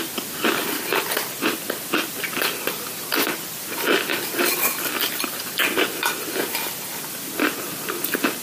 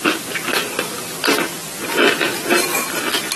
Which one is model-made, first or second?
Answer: first